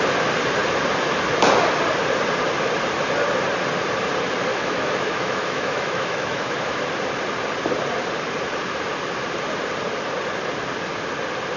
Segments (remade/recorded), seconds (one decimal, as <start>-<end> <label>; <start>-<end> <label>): 0.0-4.5 recorded; 4.5-6.8 remade; 6.8-11.6 recorded